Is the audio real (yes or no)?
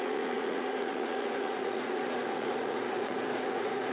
no